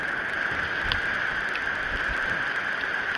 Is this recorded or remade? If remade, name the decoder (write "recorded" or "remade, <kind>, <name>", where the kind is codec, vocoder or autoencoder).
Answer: recorded